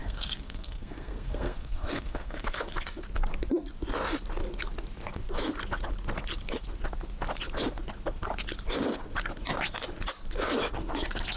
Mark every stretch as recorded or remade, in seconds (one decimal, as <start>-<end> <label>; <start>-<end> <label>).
0.0-2.6 remade; 2.6-11.4 recorded